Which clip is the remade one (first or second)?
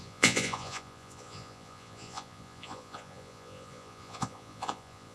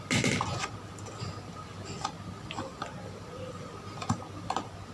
first